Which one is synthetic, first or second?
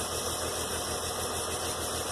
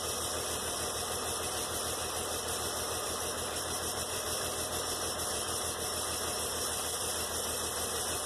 second